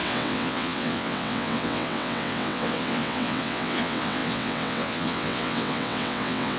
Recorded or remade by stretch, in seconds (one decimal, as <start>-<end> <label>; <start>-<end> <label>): 0.0-6.6 remade